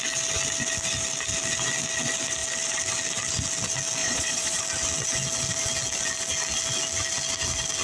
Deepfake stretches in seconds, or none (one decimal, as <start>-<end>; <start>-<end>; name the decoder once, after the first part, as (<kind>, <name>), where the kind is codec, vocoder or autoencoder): 4.0-4.6 (vocoder, Vocos)